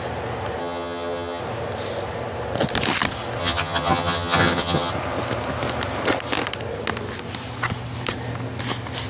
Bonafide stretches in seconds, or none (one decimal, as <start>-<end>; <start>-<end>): 0.0-0.6; 1.4-3.4; 4.9-9.1